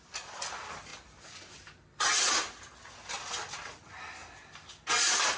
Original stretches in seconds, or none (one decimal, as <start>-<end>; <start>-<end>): 0.0-5.4